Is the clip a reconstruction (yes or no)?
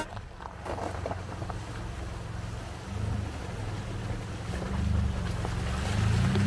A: no